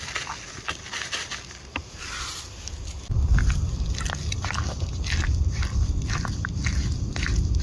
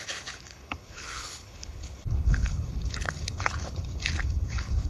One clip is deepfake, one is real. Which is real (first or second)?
first